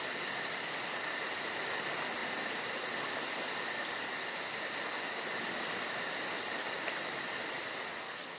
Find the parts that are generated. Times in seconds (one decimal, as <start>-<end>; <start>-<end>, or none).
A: 7.9-8.4